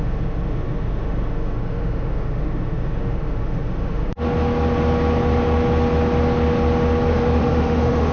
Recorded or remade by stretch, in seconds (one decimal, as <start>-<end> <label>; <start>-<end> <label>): 0.0-4.1 remade; 4.1-7.1 recorded; 7.1-8.1 remade